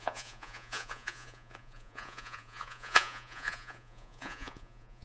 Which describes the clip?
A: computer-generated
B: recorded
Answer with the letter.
A